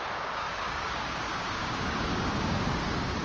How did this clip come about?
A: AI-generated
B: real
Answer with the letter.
A